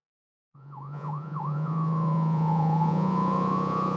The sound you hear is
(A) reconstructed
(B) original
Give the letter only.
A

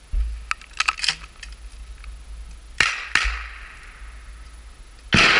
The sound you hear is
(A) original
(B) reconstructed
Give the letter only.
A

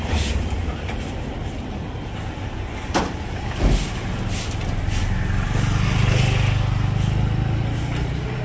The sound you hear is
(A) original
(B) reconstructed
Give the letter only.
A